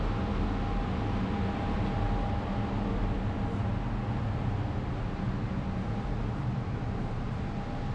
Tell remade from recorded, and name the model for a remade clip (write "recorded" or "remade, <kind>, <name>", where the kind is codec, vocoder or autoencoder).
recorded